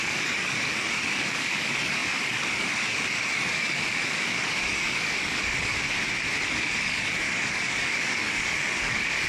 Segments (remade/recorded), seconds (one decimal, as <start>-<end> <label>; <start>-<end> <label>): 0.0-5.7 remade; 5.7-6.5 recorded; 6.5-9.3 remade